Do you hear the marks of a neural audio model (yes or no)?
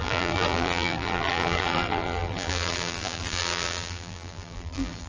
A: yes